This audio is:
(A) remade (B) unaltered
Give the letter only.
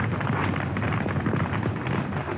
B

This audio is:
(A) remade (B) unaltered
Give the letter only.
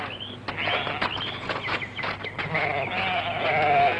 B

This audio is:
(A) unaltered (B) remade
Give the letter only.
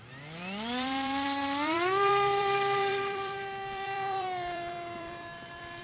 B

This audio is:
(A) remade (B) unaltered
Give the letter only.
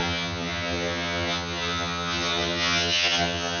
A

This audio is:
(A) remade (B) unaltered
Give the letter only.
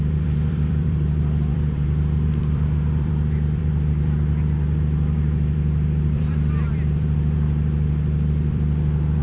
A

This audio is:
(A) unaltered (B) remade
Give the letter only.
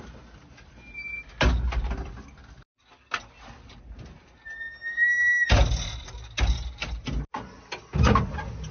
A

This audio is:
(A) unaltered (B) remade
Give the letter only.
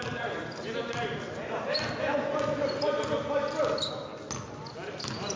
A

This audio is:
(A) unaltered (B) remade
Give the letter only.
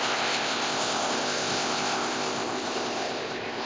B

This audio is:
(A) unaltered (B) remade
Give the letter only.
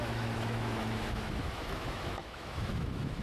B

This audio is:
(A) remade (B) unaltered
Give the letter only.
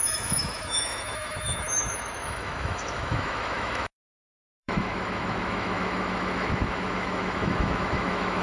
A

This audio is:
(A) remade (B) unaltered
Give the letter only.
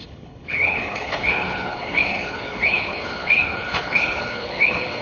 A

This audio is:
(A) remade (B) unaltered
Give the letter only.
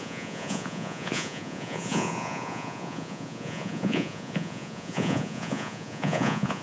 A